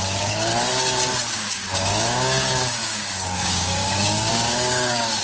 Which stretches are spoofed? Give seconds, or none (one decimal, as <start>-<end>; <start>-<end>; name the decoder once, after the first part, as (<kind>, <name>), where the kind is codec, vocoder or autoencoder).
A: 0.0-0.5 (codec, DAC); 1.3-5.2